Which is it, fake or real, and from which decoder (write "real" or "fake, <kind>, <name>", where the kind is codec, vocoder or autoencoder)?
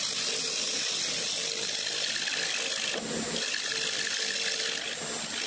real